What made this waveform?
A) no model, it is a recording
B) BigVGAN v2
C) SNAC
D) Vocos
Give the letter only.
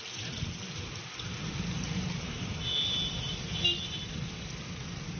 A